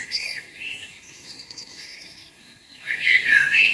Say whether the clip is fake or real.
fake